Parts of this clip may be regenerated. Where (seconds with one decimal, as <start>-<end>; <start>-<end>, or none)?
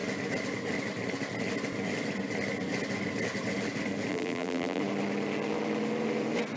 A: 4.1-4.8